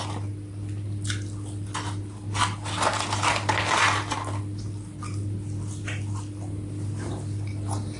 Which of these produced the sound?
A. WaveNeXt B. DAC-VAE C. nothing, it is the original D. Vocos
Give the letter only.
C